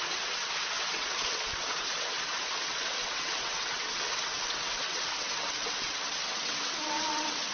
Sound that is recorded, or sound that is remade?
remade